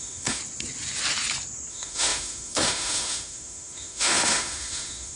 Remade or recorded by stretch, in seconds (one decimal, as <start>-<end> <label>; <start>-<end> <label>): 0.0-0.4 remade; 0.4-1.7 recorded; 1.7-5.2 remade